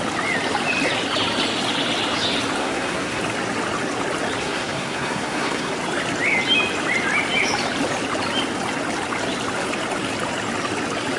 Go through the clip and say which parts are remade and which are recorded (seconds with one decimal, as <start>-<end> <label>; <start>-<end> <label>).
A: 0.0-2.6 recorded; 2.6-3.2 remade; 3.2-4.4 recorded; 4.4-5.7 remade; 5.7-11.2 recorded